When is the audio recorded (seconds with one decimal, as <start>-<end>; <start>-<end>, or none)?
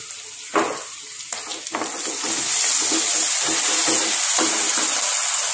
0.0-5.5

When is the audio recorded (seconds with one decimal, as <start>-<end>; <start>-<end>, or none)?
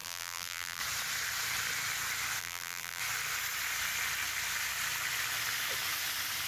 0.8-2.4; 3.0-6.5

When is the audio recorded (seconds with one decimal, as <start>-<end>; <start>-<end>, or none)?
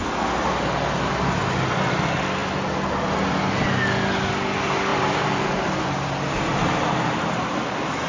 0.0-4.9; 7.6-8.1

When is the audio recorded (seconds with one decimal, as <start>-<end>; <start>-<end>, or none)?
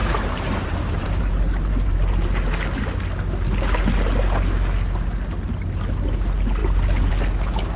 2.5-7.8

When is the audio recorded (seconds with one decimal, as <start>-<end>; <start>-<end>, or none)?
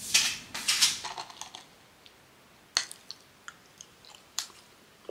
0.5-3.6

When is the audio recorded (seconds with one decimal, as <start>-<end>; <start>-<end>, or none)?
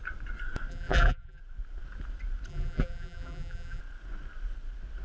0.0-0.7; 1.4-2.5; 3.8-5.0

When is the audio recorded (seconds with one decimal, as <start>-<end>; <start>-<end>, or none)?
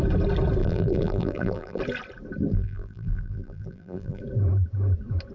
0.0-0.6; 1.8-2.5; 4.2-5.3